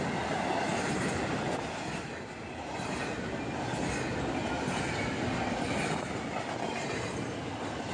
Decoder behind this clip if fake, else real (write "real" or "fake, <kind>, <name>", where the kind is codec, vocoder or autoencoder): real